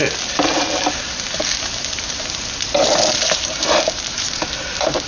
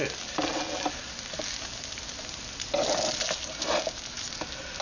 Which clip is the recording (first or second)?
second